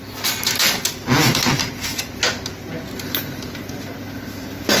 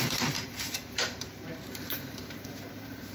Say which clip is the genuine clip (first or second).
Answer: first